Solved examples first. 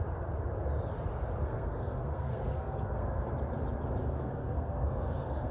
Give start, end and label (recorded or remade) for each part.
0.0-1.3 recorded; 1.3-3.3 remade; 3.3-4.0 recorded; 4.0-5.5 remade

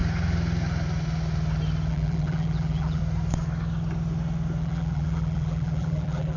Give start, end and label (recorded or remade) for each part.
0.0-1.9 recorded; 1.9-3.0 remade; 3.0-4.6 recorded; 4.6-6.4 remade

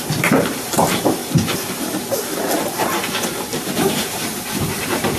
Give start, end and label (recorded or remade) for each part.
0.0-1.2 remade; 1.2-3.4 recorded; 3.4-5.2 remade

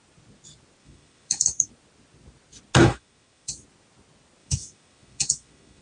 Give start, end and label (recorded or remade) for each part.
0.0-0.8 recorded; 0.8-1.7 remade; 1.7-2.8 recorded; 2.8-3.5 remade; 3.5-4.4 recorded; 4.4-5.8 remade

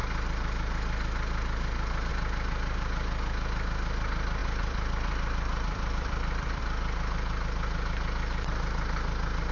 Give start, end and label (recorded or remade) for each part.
0.0-4.4 recorded; 4.4-6.6 remade; 6.6-9.5 recorded

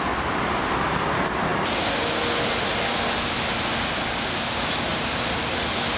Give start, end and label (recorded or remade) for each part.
0.0-6.0 recorded